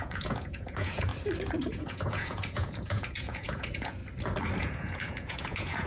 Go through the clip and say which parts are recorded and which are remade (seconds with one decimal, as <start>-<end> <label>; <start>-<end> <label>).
0.0-1.1 remade; 1.1-1.7 recorded; 1.7-4.0 remade; 4.0-4.6 recorded; 4.6-5.9 remade